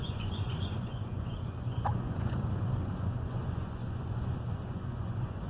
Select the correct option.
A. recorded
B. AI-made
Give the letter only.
B